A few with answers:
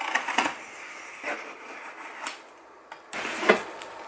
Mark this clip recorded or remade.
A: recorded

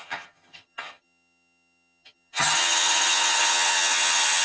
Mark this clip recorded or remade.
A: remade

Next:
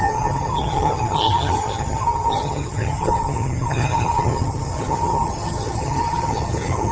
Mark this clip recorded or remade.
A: remade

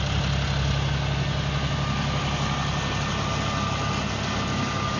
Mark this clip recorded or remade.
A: recorded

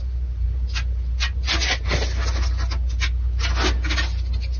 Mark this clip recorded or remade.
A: recorded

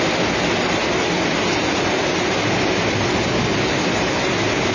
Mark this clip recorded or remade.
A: recorded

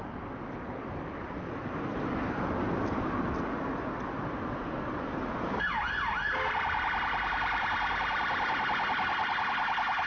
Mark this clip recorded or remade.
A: recorded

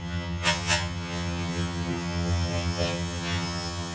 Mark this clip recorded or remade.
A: remade